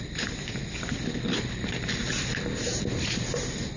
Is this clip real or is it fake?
real